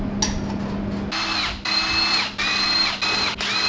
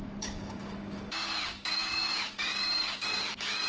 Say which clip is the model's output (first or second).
second